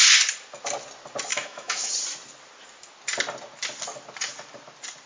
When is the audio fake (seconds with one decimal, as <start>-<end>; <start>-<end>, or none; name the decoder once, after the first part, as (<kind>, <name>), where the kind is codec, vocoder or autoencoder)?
1.3-1.9 (autoencoder, DAC-VAE)